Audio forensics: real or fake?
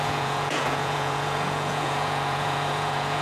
fake